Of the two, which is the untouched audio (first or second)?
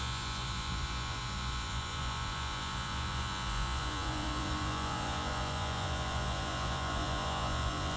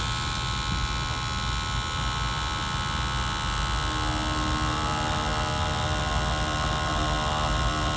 second